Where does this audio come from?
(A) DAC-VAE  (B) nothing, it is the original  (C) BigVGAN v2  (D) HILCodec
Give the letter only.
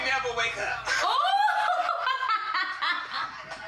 B